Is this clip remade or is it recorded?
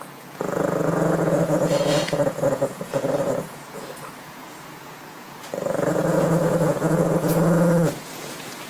remade